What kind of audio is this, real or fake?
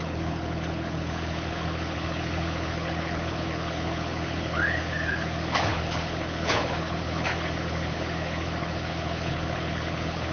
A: fake